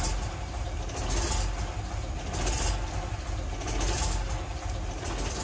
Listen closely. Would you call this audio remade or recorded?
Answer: recorded